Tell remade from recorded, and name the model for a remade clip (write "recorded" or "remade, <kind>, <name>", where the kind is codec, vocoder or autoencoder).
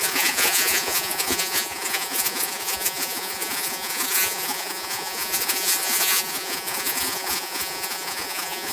remade, vocoder, Vocos